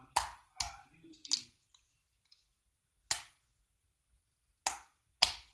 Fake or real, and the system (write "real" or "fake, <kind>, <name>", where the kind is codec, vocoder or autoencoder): real